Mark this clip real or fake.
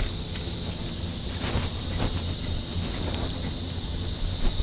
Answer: real